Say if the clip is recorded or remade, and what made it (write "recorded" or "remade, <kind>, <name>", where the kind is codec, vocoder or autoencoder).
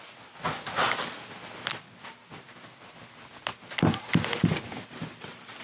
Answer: recorded